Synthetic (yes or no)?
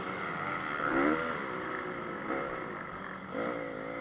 no